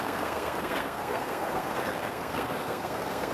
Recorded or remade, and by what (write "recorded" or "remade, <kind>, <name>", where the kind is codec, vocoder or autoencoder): remade, codec, SNAC